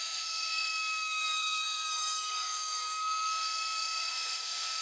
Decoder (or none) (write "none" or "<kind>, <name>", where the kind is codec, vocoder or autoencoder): codec, SNAC